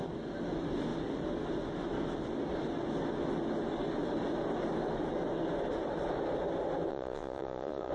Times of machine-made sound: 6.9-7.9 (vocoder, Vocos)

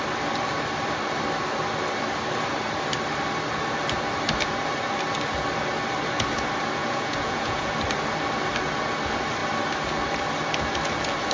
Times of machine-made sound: 6.8-7.7 (vocoder, Vocos)

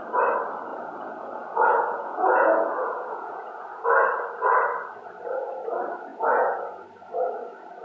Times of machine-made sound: 0.7-3.8 (vocoder, Vocos); 6.1-6.8

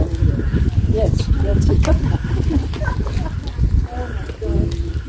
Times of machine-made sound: none

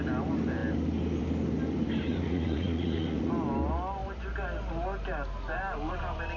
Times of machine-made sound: 2.1-3.3 (vocoder, Vocos)

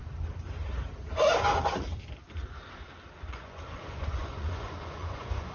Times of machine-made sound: 3.3-5.5 (vocoder, Vocos)

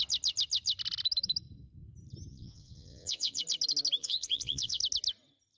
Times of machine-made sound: 2.3-3.4 (vocoder, Vocos); 4.0-4.8

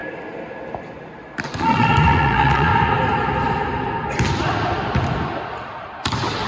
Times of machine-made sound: 1.6-2.7 (vocoder, Vocos)